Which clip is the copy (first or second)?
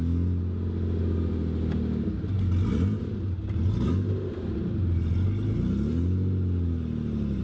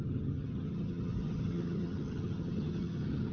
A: second